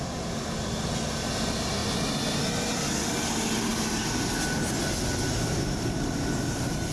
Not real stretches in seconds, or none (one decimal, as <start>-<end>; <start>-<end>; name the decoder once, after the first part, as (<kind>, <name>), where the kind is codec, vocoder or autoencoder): none

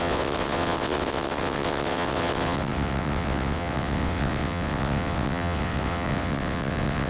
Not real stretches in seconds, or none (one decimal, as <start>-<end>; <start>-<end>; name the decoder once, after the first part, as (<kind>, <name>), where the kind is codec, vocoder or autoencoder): 0.0-7.1 (vocoder, WaveNeXt)

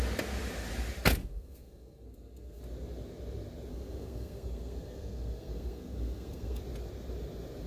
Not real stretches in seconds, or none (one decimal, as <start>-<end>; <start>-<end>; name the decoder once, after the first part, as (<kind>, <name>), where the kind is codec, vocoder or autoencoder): 1.2-2.6 (codec, SNAC); 3.7-6.6

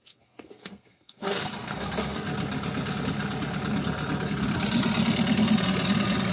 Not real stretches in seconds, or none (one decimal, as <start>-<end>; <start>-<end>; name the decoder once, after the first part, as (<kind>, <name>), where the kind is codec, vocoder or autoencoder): 0.0-2.3 (codec, SNAC)

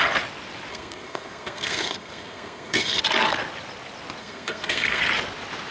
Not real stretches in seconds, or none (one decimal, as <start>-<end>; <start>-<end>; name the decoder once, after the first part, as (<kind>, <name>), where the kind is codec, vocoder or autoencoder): 0.7-3.0 (codec, SNAC); 4.2-5.0

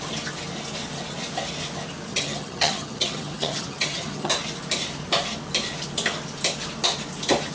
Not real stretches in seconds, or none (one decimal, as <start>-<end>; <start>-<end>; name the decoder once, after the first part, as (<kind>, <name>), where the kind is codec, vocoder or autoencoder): 2.1-4.3 (vocoder, HiFi-GAN)

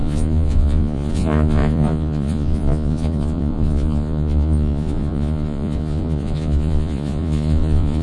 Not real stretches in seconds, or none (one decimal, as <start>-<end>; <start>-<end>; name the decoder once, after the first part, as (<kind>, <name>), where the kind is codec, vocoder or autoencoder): 0.0-8.0 (vocoder, Vocos)

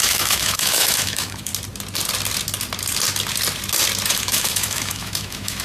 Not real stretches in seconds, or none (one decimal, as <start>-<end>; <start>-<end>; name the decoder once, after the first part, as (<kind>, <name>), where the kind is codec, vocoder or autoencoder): 0.0-1.5 (autoencoder, DAC-VAE); 4.1-5.6